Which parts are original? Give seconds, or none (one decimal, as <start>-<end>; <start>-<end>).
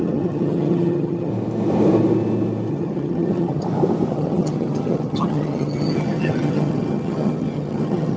1.3-2.7; 3.6-4.1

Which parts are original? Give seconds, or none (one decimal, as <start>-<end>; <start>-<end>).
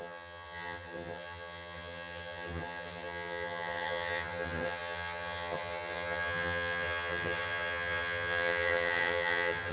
none